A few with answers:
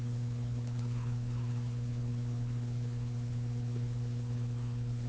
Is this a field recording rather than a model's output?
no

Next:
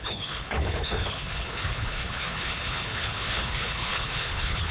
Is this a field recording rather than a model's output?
no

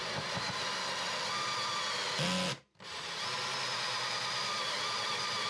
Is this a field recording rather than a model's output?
yes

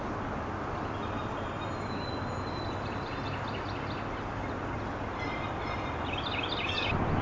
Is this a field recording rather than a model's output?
yes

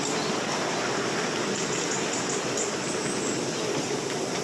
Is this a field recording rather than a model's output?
yes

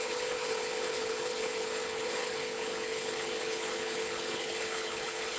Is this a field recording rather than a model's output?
no